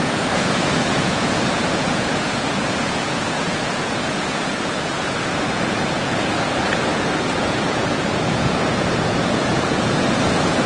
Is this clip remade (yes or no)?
yes